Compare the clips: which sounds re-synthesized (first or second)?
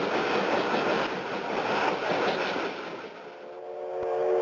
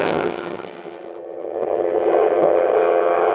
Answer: second